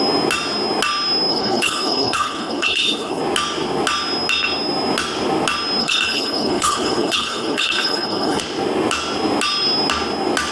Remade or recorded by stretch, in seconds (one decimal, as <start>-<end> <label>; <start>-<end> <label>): 0.0-1.3 recorded; 1.3-3.2 remade; 3.2-5.8 recorded; 5.8-8.4 remade; 8.4-10.5 recorded